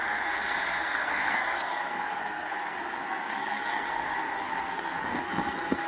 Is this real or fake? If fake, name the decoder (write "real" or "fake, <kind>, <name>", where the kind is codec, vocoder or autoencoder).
fake, codec, SNAC